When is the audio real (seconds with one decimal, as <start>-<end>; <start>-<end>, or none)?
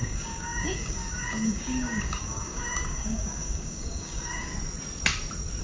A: 4.5-5.6